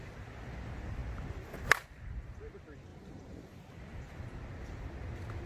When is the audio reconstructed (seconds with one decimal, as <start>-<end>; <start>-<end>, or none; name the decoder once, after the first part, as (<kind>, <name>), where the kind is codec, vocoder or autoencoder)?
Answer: 2.9-4.2 (vocoder, BigVGAN v2)